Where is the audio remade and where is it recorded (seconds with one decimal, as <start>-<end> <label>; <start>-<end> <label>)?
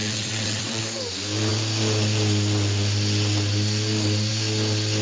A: 0.0-0.8 remade; 0.8-5.0 recorded